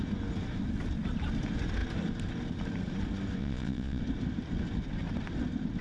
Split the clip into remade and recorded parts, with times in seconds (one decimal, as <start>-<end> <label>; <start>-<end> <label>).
0.0-3.4 recorded; 3.4-4.0 remade; 4.0-5.8 recorded